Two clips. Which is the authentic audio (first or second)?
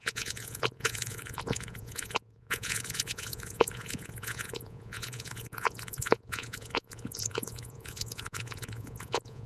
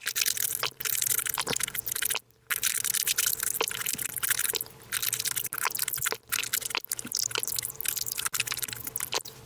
second